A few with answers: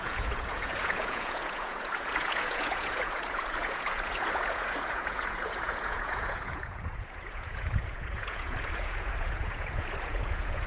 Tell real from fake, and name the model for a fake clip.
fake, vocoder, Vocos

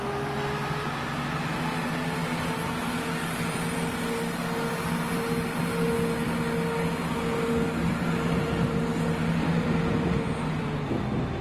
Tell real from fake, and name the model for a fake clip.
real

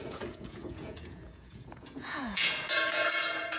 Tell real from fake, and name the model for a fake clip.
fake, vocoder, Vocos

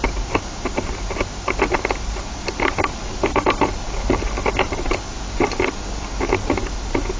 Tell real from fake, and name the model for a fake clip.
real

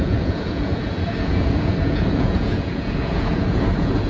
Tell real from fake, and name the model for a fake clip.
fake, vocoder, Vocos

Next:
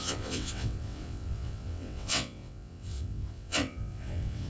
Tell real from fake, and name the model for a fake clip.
fake, vocoder, WaveNeXt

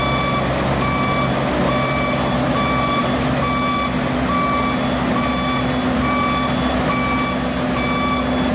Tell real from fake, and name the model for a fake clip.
real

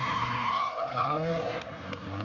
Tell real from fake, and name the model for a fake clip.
fake, codec, SNAC